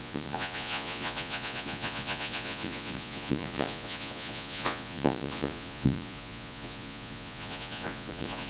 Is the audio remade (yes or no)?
yes